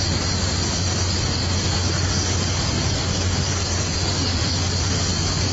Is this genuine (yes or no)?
yes